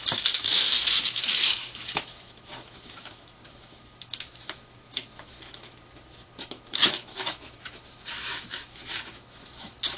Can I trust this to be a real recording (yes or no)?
no